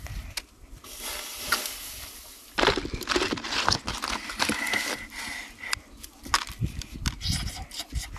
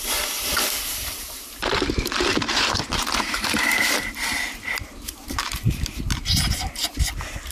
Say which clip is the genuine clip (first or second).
first